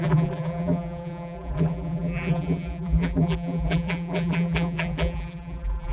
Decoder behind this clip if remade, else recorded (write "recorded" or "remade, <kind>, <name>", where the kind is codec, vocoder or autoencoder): remade, vocoder, BigVGAN v2